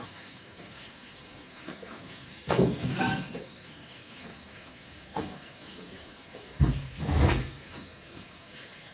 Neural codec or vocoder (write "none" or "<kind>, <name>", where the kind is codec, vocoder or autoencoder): codec, SNAC